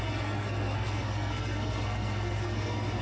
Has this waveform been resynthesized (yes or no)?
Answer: yes